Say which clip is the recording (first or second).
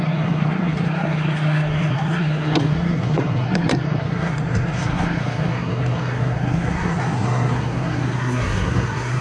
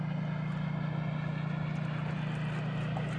second